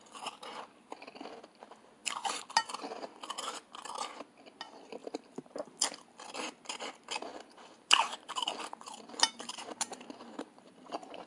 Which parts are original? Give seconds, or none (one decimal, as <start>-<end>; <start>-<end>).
0.0-2.0; 2.5-5.0; 5.7-7.3; 10.8-11.3